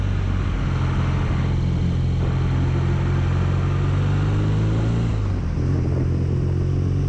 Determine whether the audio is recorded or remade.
recorded